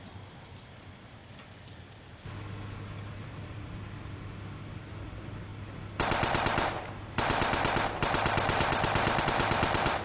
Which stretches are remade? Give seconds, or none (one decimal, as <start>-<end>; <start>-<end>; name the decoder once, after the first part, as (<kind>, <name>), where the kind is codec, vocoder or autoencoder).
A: 1.2-4.9 (vocoder, BigVGAN v2)